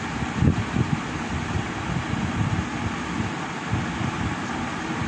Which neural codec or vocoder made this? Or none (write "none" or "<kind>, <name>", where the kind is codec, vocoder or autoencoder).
none